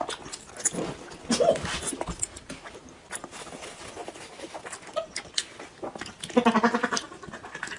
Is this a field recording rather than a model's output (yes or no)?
yes